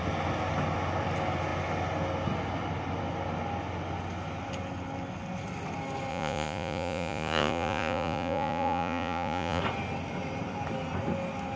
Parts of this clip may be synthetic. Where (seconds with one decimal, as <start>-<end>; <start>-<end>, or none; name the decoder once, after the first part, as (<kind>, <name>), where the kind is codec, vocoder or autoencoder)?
6.1-9.6 (vocoder, Vocos)